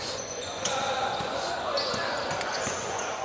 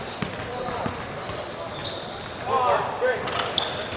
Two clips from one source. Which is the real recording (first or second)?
second